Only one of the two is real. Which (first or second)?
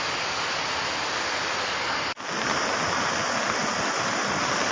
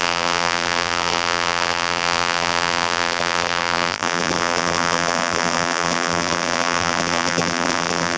first